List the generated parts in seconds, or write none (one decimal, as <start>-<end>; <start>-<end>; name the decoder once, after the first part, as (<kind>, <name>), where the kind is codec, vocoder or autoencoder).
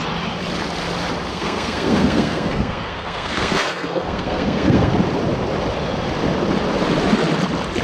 1.3-4.9 (codec, SNAC)